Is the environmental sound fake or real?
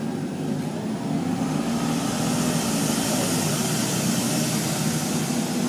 real